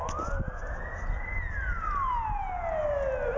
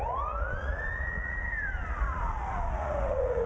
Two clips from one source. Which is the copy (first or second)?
second